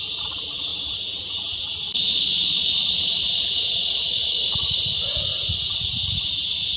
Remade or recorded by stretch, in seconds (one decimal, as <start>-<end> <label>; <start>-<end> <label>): 0.0-5.3 remade; 5.3-5.9 recorded; 5.9-6.8 remade